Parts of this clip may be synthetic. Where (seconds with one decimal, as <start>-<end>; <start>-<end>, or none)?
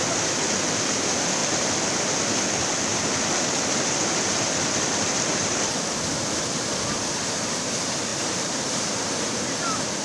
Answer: 8.1-9.1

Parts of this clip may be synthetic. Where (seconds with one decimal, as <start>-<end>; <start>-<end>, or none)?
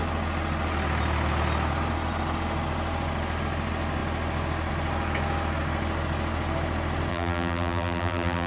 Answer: 7.1-8.5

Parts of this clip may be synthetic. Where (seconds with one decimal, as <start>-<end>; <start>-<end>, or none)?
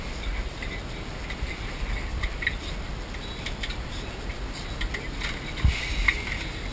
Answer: 2.1-2.6